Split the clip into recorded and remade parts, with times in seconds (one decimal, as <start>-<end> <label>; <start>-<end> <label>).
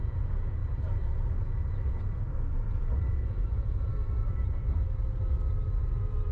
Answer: 0.0-0.6 remade; 0.6-3.5 recorded; 3.5-3.9 remade; 3.9-5.8 recorded; 5.8-6.3 remade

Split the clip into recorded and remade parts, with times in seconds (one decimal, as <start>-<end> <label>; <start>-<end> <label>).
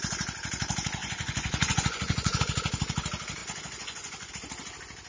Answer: 0.0-1.0 recorded; 1.0-2.4 remade; 2.4-3.4 recorded; 3.4-4.3 remade; 4.3-5.1 recorded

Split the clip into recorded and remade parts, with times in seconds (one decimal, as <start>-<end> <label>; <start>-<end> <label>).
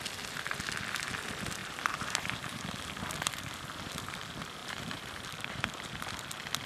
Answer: 0.0-1.6 recorded; 1.6-2.6 remade; 2.6-4.6 recorded; 4.6-6.1 remade; 6.1-6.7 recorded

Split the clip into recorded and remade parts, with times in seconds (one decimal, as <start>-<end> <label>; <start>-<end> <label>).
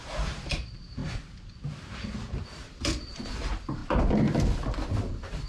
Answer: 0.0-1.0 remade; 1.0-3.3 recorded; 3.3-3.8 remade; 3.8-5.5 recorded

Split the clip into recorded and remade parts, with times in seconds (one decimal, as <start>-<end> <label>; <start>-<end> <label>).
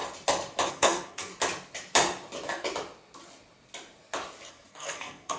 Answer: 0.0-0.7 recorded; 0.7-1.3 remade; 1.3-4.5 recorded; 4.5-5.4 remade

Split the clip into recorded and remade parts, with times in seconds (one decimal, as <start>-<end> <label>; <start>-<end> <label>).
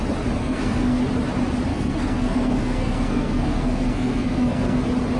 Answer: 0.0-0.4 recorded; 0.4-1.0 remade; 1.0-1.7 recorded; 1.7-4.8 remade; 4.8-5.2 recorded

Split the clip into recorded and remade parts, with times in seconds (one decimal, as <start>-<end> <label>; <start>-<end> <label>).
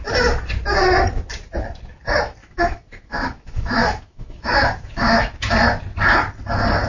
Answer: 0.0-2.4 recorded; 2.4-5.5 remade; 5.5-6.9 recorded